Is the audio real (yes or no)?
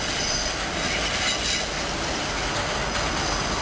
yes